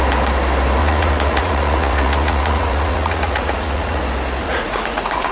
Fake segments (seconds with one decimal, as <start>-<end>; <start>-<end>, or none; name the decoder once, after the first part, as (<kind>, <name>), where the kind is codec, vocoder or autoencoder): 0.8-4.0 (vocoder, Vocos); 4.4-5.3